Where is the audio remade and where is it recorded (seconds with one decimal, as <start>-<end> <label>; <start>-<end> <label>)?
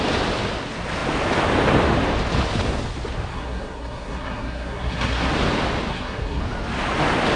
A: 0.0-3.3 recorded; 3.3-5.3 remade; 5.3-5.9 recorded; 5.9-6.4 remade; 6.4-7.4 recorded